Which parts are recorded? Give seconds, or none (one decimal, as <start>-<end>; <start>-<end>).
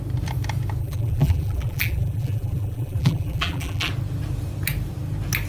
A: 0.0-0.8; 3.9-5.5